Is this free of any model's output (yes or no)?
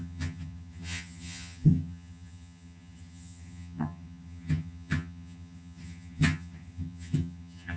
no